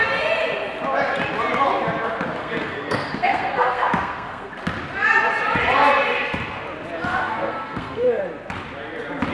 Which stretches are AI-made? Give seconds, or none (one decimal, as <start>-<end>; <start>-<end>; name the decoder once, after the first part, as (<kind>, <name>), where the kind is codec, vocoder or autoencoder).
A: 2.4-4.5 (codec, SNAC); 7.1-8.2